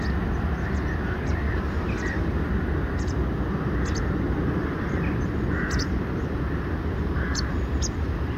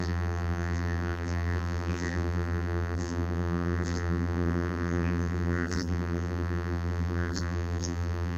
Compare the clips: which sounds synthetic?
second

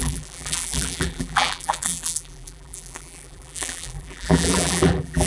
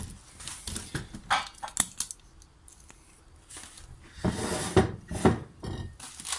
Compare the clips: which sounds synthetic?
first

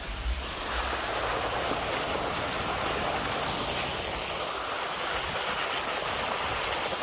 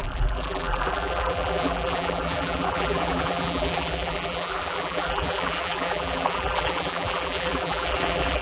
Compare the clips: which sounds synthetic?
second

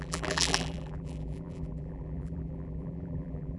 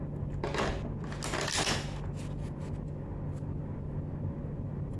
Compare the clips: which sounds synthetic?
first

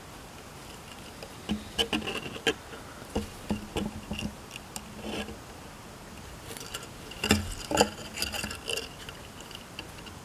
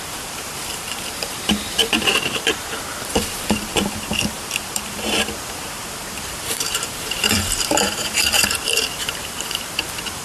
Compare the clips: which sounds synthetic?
second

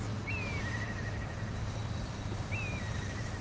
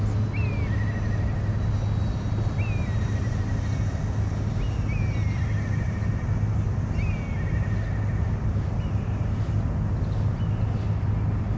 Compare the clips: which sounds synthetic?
first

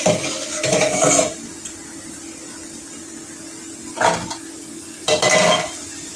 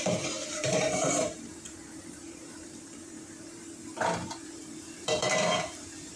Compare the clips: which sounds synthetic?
second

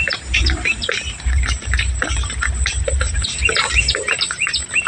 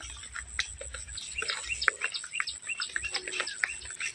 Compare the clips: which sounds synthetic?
first